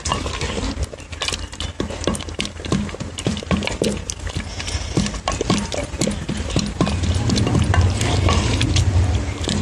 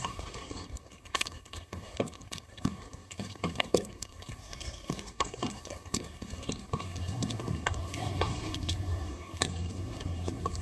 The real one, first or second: first